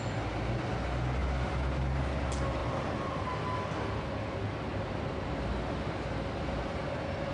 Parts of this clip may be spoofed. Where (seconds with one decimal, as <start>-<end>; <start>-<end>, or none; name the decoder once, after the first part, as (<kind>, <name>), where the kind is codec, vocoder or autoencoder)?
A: none